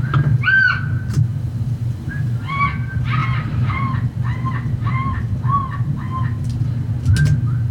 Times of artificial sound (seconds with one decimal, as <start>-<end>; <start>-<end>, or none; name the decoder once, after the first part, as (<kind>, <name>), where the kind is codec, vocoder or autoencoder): none